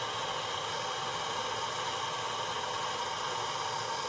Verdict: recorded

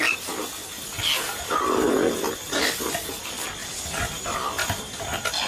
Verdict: recorded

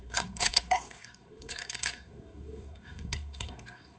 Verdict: remade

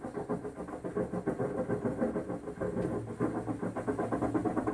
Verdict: recorded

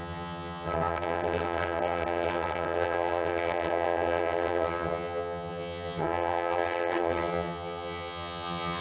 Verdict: remade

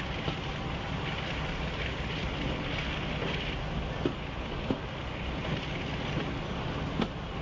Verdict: recorded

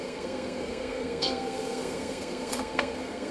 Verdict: remade